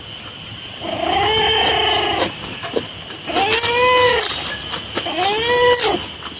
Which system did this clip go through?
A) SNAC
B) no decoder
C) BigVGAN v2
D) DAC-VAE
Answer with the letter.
B